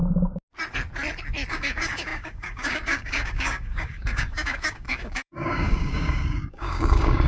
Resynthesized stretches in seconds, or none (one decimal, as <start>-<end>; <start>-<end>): 1.5-7.3